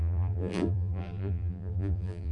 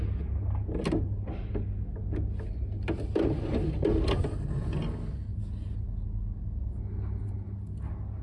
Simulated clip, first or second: first